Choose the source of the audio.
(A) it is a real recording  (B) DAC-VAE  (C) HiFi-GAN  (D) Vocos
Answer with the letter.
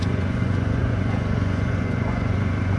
D